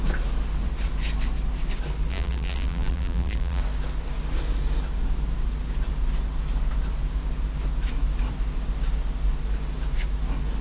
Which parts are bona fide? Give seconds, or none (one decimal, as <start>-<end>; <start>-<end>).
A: 0.0-2.1; 3.6-10.6